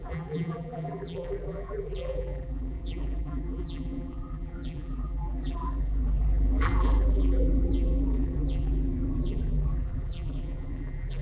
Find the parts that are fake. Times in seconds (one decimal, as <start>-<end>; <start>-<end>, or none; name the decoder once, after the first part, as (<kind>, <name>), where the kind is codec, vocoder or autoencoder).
0.0-11.2 (vocoder, BigVGAN v2)